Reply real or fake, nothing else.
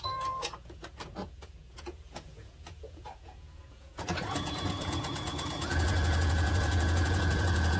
fake